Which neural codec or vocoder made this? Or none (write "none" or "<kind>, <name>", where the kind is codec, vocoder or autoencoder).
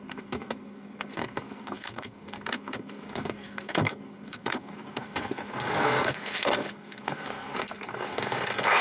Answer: codec, SNAC